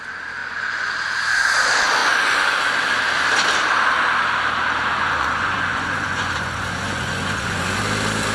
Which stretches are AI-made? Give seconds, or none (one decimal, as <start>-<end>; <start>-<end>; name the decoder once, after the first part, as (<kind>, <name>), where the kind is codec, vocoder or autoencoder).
0.4-0.9 (vocoder, Vocos); 2.0-2.6; 4.9-7.8

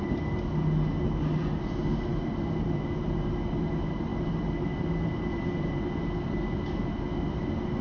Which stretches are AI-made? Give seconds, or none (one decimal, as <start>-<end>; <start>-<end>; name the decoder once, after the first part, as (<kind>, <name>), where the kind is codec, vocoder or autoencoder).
none

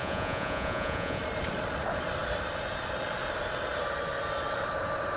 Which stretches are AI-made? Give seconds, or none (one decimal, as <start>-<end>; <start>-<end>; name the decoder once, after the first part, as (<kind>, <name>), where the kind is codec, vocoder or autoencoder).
0.0-1.2 (vocoder, Vocos)

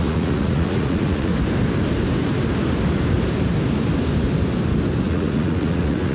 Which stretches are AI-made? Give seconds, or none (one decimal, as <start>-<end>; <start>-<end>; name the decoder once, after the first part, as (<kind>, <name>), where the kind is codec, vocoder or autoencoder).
0.0-1.3 (vocoder, Vocos); 5.0-6.1

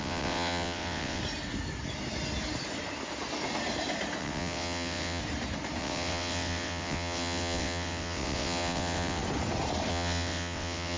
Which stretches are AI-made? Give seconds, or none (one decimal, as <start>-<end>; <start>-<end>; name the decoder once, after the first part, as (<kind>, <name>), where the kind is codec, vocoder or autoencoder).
0.0-1.2 (vocoder, WaveNeXt); 4.2-5.2; 5.8-9.2; 9.9-11.0

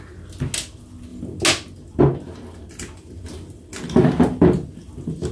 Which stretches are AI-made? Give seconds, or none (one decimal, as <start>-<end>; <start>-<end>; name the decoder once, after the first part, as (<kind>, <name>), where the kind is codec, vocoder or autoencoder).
none

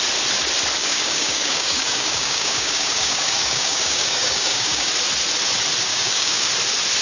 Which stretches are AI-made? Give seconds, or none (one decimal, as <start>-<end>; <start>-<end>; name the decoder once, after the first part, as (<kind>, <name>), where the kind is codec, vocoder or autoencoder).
0.8-4.9 (codec, DAC); 5.9-6.5